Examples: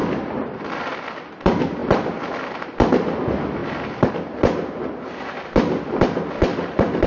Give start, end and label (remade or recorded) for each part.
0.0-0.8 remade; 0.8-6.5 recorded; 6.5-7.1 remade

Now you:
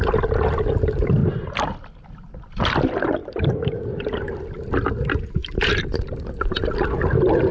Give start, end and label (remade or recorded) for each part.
0.0-3.2 recorded; 3.2-3.9 remade; 3.9-5.4 recorded; 5.4-6.2 remade; 6.2-7.5 recorded

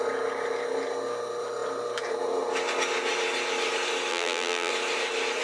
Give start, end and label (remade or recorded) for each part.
0.0-4.1 recorded; 4.1-4.7 remade; 4.7-5.4 recorded

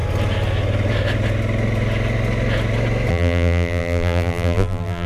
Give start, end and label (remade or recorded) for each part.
0.0-3.1 recorded; 3.1-5.1 remade